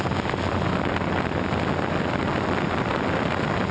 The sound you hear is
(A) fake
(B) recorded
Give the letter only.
B